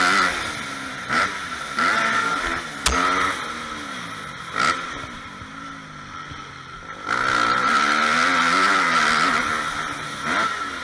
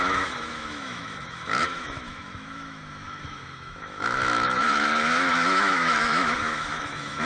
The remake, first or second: second